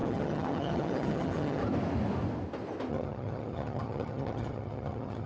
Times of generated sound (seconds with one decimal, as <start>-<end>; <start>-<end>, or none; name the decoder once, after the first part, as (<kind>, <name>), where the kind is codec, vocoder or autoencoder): 0.0-1.6 (vocoder, HiFi-GAN); 2.9-5.3